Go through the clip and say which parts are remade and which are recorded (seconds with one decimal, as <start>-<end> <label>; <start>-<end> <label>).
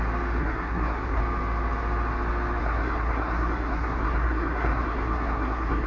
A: 0.0-0.4 recorded; 0.4-1.2 remade; 1.2-2.6 recorded; 2.6-5.9 remade